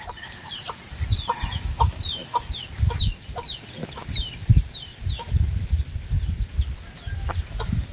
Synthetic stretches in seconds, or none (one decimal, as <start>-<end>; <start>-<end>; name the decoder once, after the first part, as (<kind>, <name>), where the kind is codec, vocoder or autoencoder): 0.0-2.2 (vocoder, BigVGAN v2); 3.0-4.9; 6.7-7.9